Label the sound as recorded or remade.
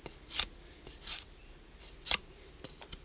recorded